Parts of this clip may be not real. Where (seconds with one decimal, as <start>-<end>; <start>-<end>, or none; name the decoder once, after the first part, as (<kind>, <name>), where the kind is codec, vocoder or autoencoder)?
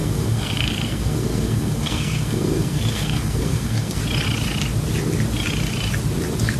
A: 0.0-4.0 (codec, SNAC)